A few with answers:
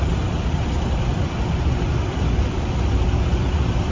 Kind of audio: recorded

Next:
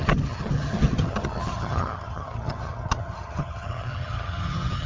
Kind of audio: remade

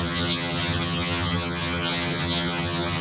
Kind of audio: remade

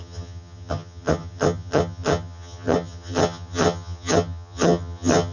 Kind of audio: remade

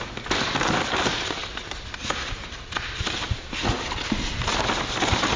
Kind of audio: recorded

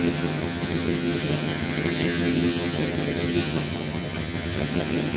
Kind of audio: remade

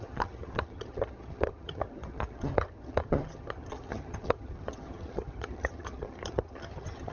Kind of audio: remade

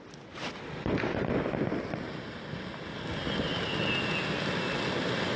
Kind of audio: recorded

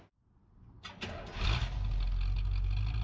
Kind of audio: recorded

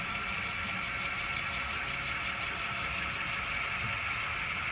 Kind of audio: recorded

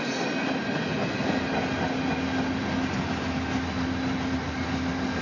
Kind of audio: recorded